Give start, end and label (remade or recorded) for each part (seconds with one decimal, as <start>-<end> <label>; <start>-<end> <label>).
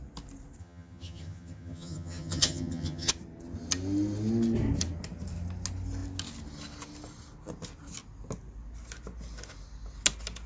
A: 0.0-0.6 recorded; 0.6-3.1 remade; 3.1-10.5 recorded